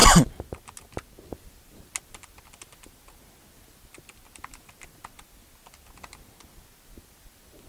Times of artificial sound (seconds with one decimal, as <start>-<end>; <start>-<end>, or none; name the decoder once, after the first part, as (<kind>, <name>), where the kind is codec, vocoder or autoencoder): none